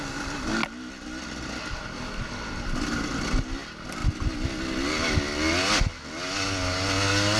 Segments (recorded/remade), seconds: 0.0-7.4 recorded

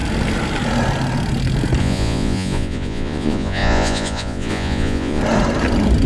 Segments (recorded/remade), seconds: 0.0-1.8 recorded; 1.8-5.2 remade; 5.2-6.1 recorded